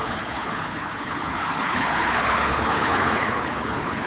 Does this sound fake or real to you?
fake